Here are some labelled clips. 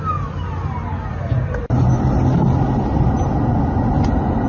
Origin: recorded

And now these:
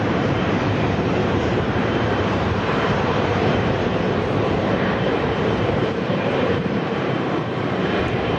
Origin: remade